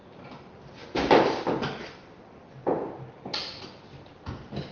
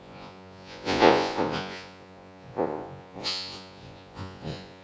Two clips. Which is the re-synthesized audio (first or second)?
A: second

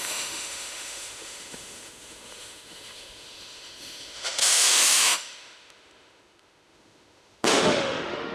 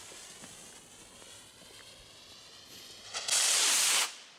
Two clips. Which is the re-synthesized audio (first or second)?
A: first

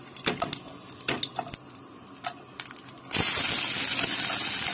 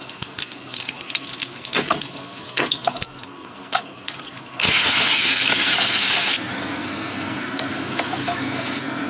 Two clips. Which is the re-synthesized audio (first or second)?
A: second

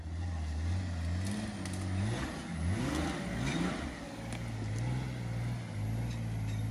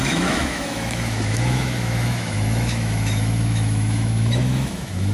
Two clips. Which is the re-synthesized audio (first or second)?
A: second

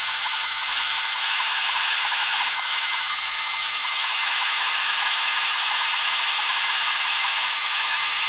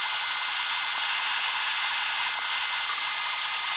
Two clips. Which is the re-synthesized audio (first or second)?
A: first